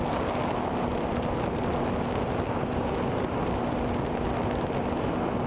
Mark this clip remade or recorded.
recorded